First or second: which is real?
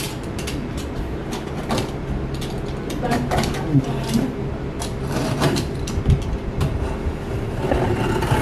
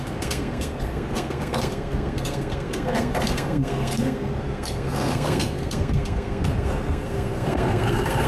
first